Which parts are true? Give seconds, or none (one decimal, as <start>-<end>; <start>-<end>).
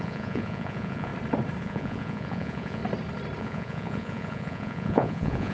1.1-1.6; 2.8-3.4